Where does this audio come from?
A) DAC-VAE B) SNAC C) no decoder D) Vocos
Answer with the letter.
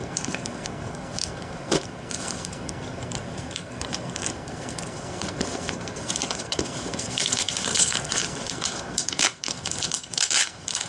B